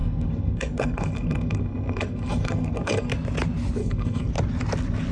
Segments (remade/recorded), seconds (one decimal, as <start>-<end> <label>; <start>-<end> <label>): 0.0-3.1 remade; 3.1-3.8 recorded; 3.8-4.3 remade; 4.3-5.1 recorded